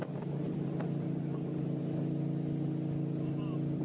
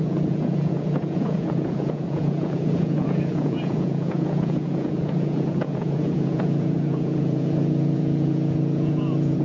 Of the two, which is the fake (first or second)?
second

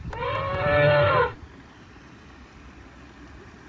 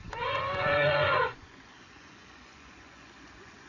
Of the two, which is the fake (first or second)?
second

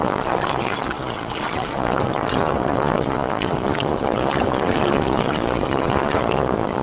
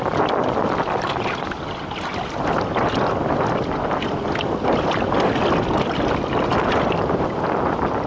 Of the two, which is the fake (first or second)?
first